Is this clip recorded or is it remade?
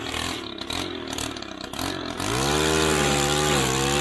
recorded